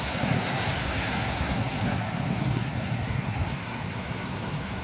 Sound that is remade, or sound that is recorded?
remade